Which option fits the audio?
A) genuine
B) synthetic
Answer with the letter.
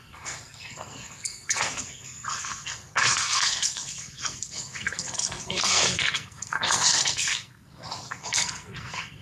B